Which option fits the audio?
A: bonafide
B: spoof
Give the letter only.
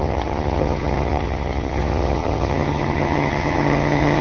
B